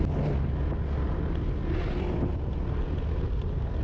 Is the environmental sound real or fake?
real